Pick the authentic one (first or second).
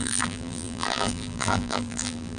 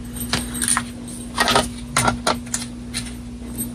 second